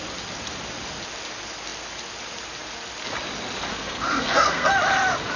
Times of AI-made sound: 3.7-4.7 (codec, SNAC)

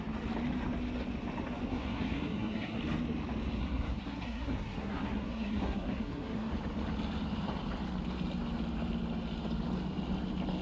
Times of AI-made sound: 1.7-2.8 (codec, SNAC); 3.6-6.5

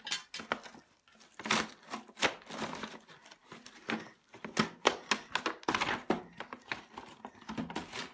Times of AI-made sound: none

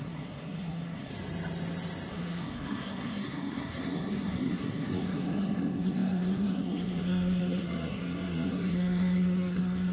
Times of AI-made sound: 0.0-1.1 (codec, SNAC); 2.1-9.9

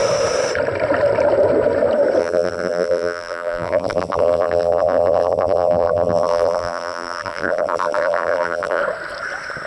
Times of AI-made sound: 2.2-8.8 (vocoder, BigVGAN v2)

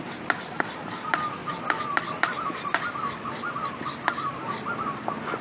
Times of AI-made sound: none

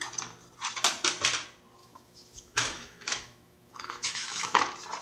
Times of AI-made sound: 1.8-4.6 (autoencoder, DAC-VAE)

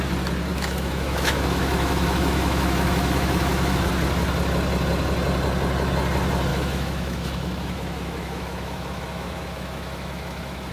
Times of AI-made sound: 0.5-3.9 (autoencoder, DAC-VAE); 6.5-10.7